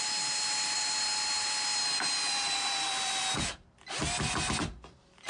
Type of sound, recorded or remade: remade